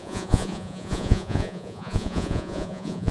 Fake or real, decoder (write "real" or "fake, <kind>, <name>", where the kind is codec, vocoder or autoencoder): fake, vocoder, Vocos